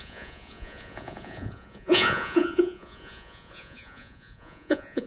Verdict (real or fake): fake